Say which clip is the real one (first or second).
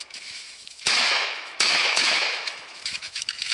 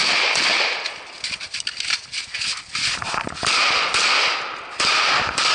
second